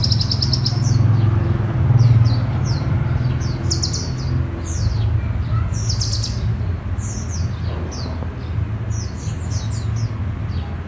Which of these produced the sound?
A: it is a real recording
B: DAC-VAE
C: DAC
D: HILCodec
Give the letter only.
A